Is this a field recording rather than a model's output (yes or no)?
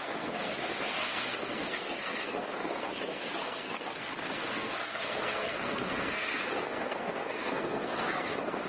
no